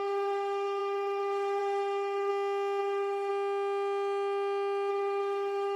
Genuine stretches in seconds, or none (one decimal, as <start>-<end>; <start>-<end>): 2.3-2.8; 3.3-4.9